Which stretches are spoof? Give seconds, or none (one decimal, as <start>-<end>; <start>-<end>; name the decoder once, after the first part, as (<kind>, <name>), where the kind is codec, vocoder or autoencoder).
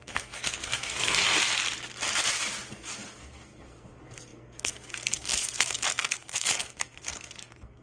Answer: 0.0-1.2 (codec, SNAC); 2.7-7.8